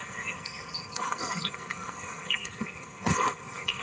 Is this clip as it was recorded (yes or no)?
no